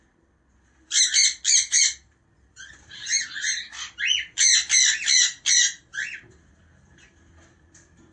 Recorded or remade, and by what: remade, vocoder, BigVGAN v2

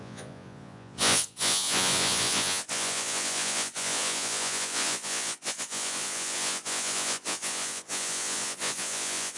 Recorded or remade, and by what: remade, vocoder, Vocos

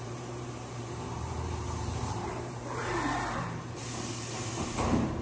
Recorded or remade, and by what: remade, vocoder, BigVGAN v2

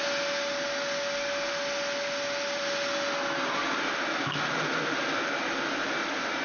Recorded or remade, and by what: recorded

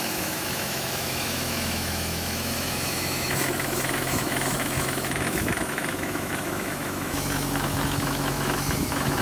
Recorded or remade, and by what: remade, autoencoder, DAC-VAE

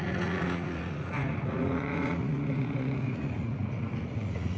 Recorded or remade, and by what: remade, vocoder, Vocos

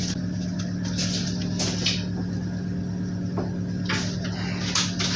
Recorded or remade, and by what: recorded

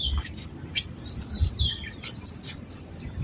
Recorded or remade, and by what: remade, vocoder, BigVGAN v2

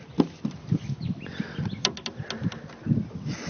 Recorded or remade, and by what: recorded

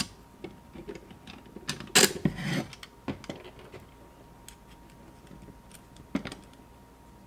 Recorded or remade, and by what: recorded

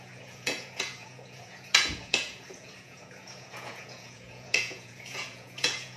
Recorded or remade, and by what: remade, vocoder, Vocos